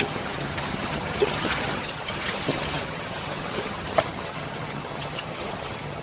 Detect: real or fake fake